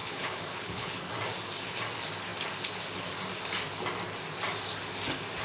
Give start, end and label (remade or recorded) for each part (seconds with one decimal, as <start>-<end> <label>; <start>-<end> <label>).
0.0-1.1 remade; 1.1-5.4 recorded